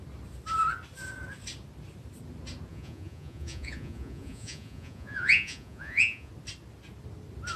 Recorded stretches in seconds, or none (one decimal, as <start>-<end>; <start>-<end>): 0.0-2.7; 6.3-7.6